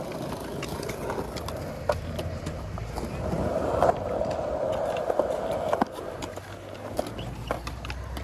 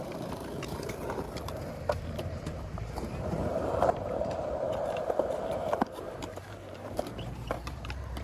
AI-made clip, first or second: second